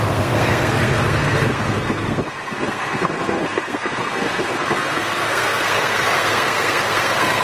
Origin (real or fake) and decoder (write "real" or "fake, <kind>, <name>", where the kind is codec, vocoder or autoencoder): fake, codec, SNAC